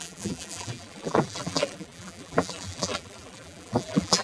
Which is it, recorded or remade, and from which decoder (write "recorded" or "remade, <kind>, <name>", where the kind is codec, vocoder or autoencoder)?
remade, vocoder, BigVGAN v2